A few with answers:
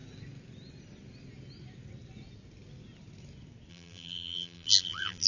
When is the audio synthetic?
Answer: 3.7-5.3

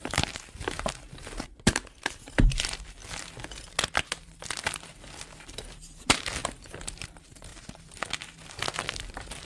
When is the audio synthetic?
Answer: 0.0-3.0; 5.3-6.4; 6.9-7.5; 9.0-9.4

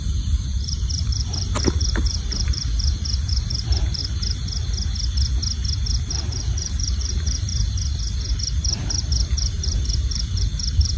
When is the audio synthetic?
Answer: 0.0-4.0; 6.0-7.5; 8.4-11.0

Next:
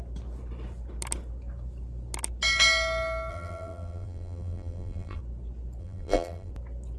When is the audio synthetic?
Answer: 3.3-5.2; 5.8-6.5

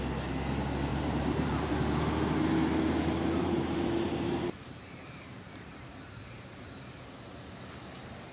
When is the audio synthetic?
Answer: 0.9-1.7; 3.4-7.5

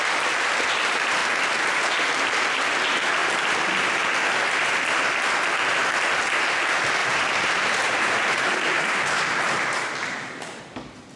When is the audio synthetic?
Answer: 1.2-1.8; 7.0-10.6